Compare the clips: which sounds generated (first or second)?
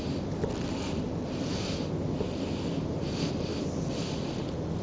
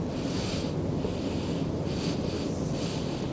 second